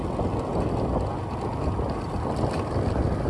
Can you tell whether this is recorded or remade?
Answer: recorded